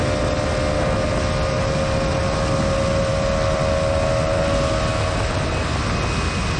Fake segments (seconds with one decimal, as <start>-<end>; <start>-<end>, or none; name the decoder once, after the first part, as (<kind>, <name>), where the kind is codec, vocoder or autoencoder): none